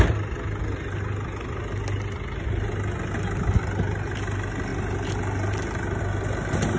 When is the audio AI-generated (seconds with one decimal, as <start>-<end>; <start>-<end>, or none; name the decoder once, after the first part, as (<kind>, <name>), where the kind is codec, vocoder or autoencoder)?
none